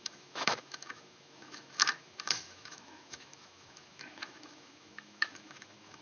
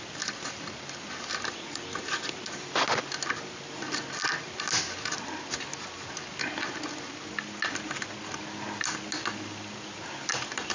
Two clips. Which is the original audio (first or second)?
second